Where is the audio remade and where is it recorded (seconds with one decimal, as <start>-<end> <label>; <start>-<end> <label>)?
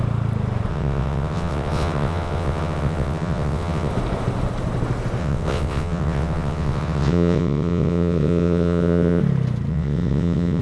0.0-0.7 recorded; 0.7-3.9 remade; 3.9-5.2 recorded; 5.2-9.2 remade; 9.2-9.7 recorded; 9.7-10.6 remade